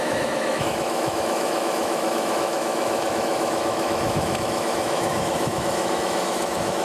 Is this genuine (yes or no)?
no